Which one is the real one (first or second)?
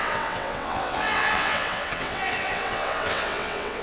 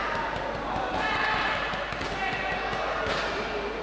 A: second